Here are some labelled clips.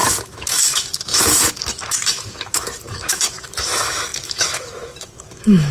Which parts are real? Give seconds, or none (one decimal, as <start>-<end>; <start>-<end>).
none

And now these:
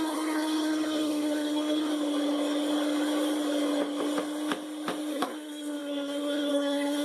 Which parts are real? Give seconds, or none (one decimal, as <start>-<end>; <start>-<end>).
1.9-5.1

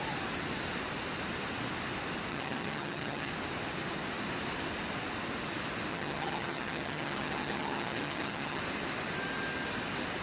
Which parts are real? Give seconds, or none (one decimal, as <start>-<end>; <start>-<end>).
0.0-2.3; 3.3-5.9; 8.6-10.2

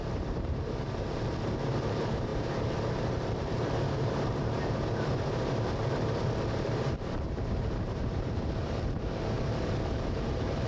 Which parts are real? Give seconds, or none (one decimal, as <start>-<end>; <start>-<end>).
none

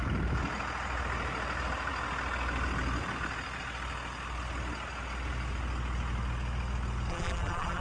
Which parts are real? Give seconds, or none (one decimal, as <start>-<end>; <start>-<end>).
0.0-7.1

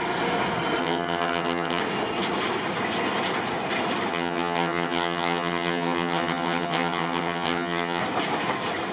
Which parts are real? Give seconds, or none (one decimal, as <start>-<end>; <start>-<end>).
0.0-0.8; 1.8-4.1; 8.0-8.9

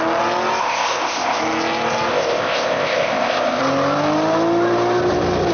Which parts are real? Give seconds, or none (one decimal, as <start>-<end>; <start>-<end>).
0.0-0.6; 1.4-2.1; 3.6-5.5